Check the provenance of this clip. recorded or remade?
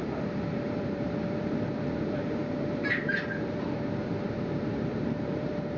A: remade